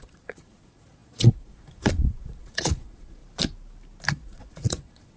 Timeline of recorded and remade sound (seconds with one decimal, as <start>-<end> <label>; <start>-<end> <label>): 0.0-3.2 remade; 3.2-4.1 recorded; 4.1-5.2 remade